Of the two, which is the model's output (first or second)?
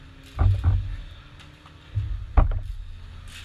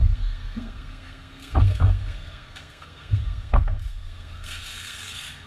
second